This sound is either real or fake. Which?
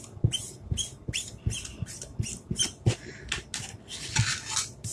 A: real